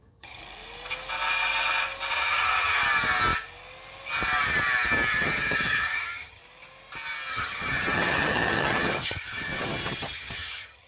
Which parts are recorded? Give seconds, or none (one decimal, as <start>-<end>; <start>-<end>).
0.4-2.1; 2.8-5.1; 6.4-7.3